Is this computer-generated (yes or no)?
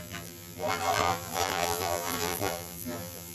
yes